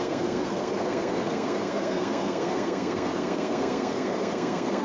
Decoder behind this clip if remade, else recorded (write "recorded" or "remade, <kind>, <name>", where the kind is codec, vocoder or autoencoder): remade, codec, SNAC